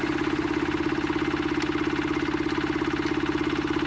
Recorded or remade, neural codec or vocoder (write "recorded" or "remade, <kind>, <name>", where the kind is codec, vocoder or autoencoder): recorded